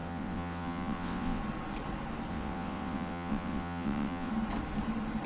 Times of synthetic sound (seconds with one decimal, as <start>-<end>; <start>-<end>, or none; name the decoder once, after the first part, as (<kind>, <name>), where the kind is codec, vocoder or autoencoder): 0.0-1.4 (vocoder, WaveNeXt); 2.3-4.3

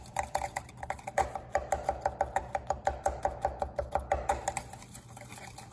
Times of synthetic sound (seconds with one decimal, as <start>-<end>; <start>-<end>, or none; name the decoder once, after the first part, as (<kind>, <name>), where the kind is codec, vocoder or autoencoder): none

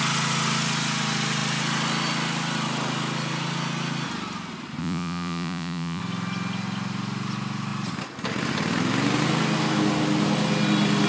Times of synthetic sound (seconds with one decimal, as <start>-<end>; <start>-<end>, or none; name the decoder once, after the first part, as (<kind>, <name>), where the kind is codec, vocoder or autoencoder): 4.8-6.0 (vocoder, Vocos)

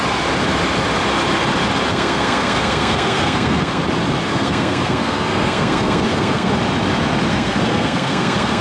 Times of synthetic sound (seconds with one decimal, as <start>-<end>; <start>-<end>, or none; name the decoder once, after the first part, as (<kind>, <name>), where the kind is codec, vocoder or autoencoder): 1.9-3.8 (codec, SNAC); 4.3-6.5; 7.3-8.6